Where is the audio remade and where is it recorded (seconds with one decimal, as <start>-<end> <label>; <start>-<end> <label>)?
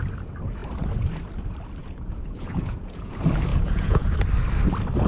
0.0-1.8 recorded; 1.8-3.1 remade; 3.1-3.5 recorded; 3.5-4.1 remade; 4.1-5.1 recorded